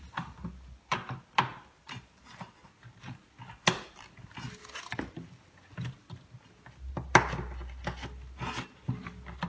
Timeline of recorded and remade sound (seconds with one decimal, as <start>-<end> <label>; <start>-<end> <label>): 0.0-9.5 recorded